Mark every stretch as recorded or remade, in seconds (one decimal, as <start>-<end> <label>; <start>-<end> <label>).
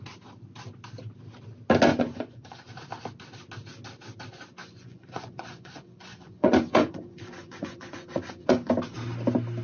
0.0-1.9 recorded; 1.9-2.7 remade; 2.7-4.6 recorded; 4.6-8.7 remade; 8.7-9.6 recorded